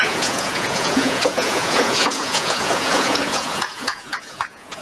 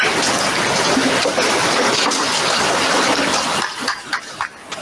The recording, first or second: second